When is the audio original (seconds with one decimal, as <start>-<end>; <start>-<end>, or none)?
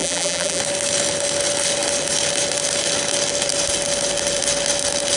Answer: 0.6-5.2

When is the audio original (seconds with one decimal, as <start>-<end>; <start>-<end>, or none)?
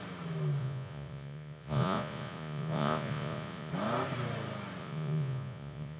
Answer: 0.0-0.6; 3.7-4.8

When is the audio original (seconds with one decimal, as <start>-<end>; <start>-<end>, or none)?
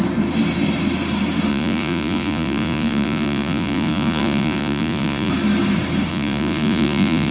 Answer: 0.0-1.5; 5.3-6.1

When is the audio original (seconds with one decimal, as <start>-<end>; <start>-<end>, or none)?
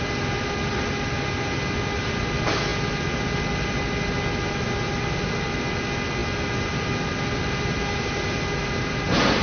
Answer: 0.0-9.4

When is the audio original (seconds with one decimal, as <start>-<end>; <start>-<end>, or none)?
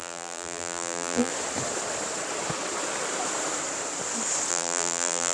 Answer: 1.3-4.5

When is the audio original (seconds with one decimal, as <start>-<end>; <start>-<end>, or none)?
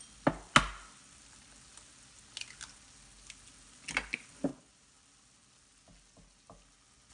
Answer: 0.0-7.1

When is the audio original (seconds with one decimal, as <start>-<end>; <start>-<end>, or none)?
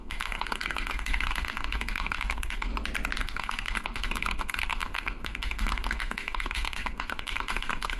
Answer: 2.7-3.2